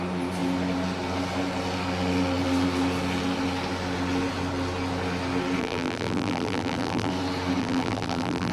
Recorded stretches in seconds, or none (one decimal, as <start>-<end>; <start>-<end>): 0.0-5.6; 7.1-7.6